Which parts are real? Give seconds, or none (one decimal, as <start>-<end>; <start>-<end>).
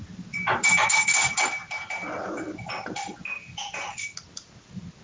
0.0-5.0